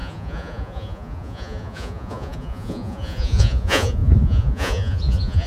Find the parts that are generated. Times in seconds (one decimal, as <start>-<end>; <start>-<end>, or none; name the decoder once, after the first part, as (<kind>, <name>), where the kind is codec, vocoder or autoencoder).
0.0-5.5 (vocoder, Vocos)